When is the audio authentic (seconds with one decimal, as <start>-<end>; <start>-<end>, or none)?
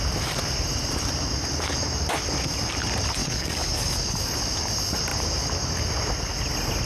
0.0-3.2; 4.2-6.8